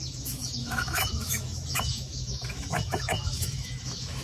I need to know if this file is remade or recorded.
remade